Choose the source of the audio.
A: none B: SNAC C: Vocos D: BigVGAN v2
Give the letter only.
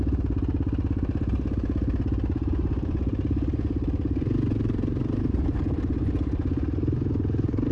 A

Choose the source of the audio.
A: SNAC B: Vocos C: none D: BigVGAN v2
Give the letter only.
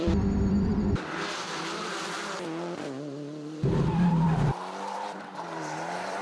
D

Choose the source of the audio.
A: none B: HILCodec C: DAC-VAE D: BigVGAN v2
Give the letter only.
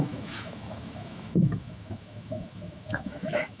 C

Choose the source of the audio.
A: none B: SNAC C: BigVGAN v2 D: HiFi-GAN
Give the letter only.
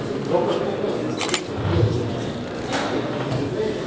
A